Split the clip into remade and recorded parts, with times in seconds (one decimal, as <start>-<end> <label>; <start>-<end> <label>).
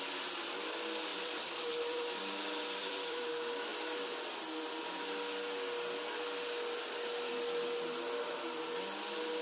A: 0.0-1.1 recorded; 1.1-3.3 remade; 3.3-9.4 recorded